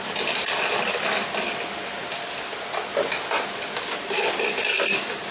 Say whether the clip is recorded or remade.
recorded